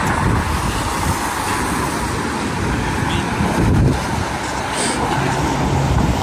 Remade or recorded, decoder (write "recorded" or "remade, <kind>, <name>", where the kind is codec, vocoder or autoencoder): recorded